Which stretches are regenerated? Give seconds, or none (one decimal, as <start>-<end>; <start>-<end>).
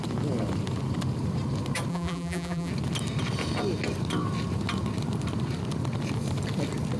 1.9-2.7